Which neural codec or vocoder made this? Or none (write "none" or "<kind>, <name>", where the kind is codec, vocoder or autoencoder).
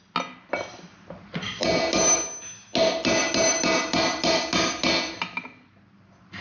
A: none